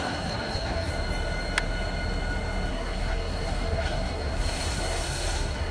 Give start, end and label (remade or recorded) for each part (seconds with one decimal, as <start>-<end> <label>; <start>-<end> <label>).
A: 0.0-0.9 remade; 0.9-2.7 recorded; 2.7-5.7 remade